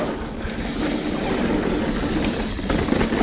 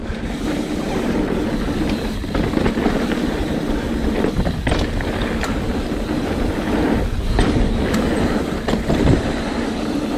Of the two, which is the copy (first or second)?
second